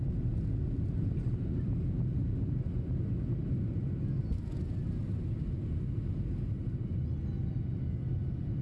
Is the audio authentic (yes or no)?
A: yes